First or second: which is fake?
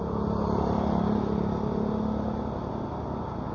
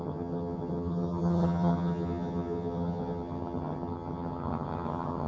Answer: second